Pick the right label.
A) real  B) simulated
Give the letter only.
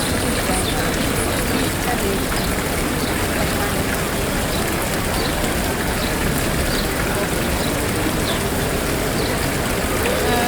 A